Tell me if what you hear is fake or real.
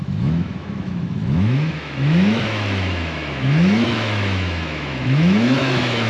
fake